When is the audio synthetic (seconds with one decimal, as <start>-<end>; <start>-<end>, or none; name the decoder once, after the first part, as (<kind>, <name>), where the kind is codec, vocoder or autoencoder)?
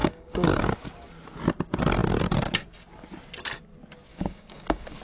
0.0-0.6 (codec, DAC); 4.1-5.0